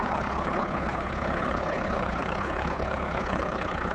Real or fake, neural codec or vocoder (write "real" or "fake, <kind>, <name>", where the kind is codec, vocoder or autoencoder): fake, codec, HILCodec